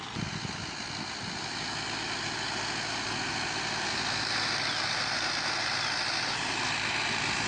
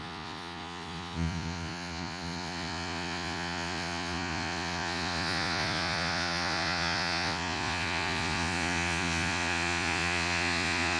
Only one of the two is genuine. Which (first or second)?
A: first